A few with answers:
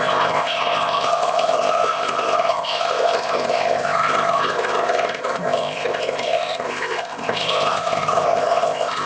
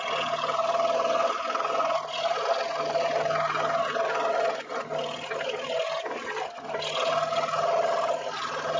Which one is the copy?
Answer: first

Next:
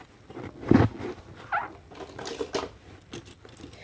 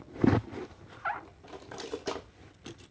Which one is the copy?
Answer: second